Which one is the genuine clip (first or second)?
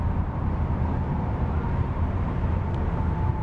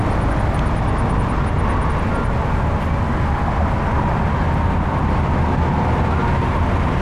second